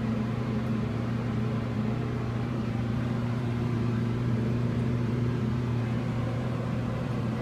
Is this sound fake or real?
fake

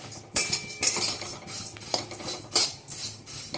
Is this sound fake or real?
real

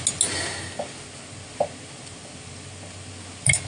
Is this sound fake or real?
real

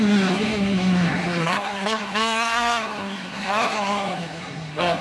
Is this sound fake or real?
fake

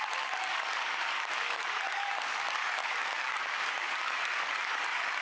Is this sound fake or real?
fake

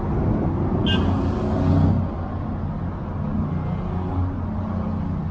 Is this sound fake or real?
real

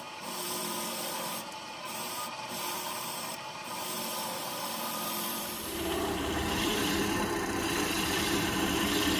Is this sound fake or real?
fake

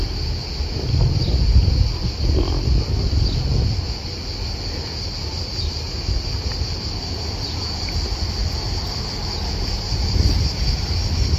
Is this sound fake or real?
real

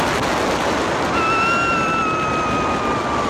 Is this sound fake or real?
real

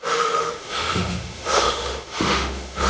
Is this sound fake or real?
fake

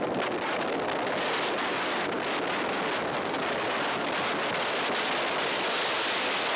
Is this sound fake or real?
real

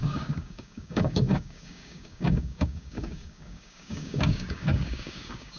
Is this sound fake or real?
fake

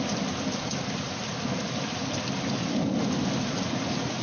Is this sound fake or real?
real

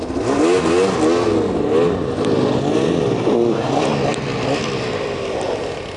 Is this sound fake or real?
real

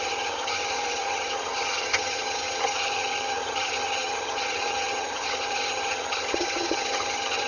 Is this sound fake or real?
fake